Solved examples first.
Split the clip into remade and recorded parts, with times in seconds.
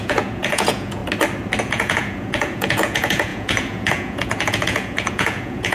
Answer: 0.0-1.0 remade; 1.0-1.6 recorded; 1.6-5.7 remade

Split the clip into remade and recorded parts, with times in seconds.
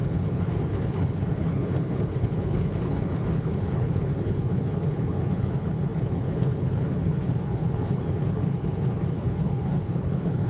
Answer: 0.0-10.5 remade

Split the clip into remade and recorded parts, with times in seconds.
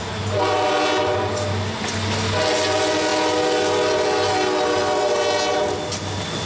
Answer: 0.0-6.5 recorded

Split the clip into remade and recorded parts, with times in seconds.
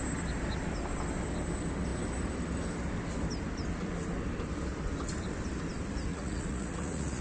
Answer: 0.0-6.1 recorded; 6.1-7.2 remade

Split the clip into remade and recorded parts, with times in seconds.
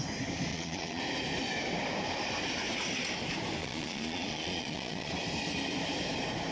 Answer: 0.0-0.5 recorded; 0.5-1.0 remade; 1.0-3.6 recorded; 3.6-5.1 remade; 5.1-6.5 recorded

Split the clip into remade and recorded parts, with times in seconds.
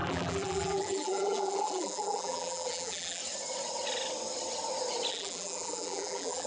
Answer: 0.0-3.2 remade; 3.2-5.1 recorded; 5.1-6.5 remade